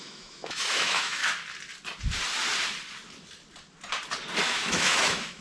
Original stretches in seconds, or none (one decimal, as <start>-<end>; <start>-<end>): 1.2-4.4